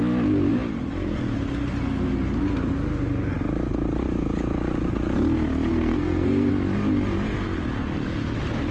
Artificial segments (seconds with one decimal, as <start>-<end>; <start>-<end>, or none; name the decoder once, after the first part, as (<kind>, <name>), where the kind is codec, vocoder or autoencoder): 5.7-6.5 (codec, SNAC)

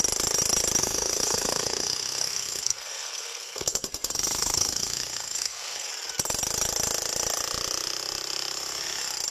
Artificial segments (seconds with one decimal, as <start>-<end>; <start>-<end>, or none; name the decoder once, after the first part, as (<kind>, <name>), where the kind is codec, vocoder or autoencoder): 0.8-5.9 (codec, SNAC)

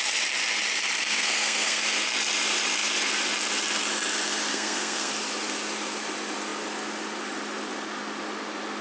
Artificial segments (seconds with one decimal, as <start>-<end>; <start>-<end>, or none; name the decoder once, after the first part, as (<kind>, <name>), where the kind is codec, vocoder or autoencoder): 1.1-1.8 (codec, SNAC); 4.5-5.1

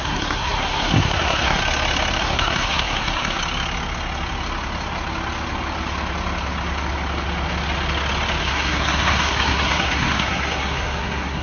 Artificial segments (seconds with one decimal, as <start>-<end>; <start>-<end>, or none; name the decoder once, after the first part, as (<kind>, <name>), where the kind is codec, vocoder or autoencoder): 0.0-1.6 (codec, SNAC); 2.2-3.4; 8.4-11.4